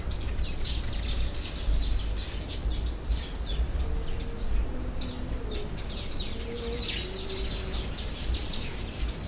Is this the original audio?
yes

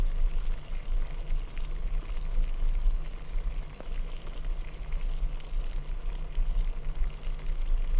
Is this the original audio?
yes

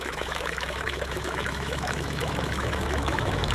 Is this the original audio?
no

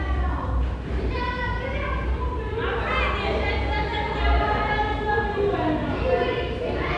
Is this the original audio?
yes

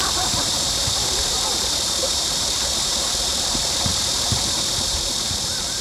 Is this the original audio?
no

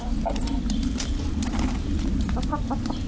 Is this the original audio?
yes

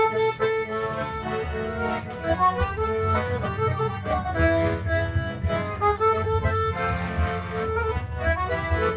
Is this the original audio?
no